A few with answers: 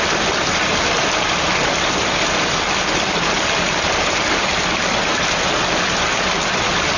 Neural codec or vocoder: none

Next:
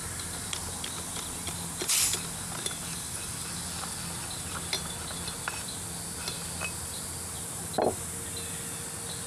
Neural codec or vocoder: none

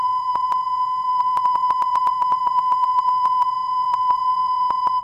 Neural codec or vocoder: vocoder, Vocos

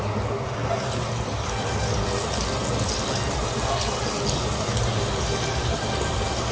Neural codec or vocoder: none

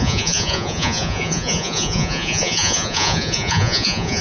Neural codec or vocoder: vocoder, Vocos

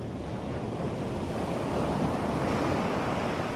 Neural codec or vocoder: none